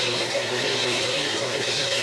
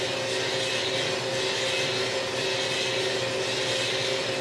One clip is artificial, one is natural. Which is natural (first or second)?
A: second